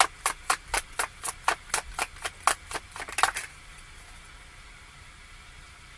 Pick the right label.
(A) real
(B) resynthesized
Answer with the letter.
A